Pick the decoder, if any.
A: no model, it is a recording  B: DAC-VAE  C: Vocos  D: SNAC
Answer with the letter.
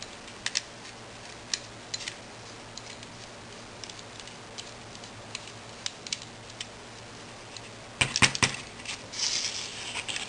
A